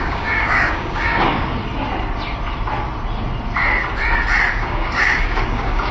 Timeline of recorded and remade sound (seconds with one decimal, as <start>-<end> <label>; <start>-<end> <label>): 0.0-1.5 remade; 1.5-4.5 recorded; 4.5-5.9 remade